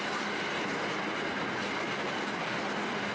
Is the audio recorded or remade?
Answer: recorded